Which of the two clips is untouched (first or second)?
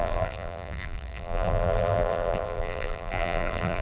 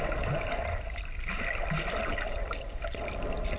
second